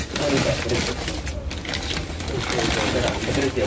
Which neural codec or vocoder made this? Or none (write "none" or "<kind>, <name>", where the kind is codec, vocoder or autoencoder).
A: none